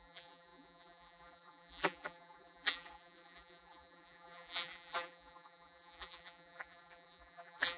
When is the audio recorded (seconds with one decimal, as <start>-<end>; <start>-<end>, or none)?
none